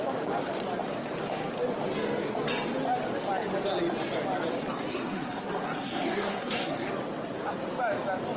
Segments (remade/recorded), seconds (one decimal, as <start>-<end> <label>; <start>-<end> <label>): 0.0-4.9 recorded; 4.9-6.9 remade; 6.9-8.4 recorded